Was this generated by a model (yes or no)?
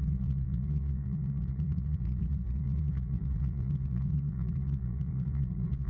yes